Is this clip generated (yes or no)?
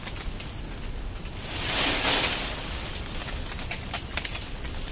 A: no